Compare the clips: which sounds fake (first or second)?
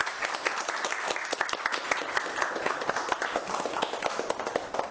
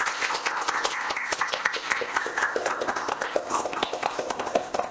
second